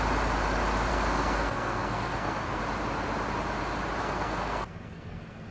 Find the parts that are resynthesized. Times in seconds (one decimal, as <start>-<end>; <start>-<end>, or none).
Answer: 0.9-2.6; 4.0-5.5